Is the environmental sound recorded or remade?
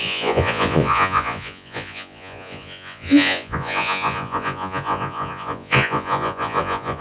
remade